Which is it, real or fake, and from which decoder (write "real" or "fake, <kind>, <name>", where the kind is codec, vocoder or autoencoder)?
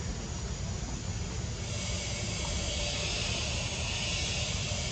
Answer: real